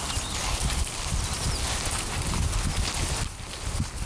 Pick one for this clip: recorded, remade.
recorded